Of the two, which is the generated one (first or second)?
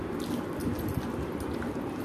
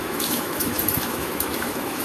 second